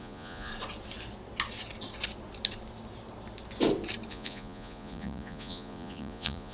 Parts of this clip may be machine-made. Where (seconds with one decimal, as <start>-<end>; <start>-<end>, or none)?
0.0-0.5; 4.1-6.5